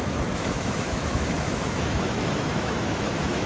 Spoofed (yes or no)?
yes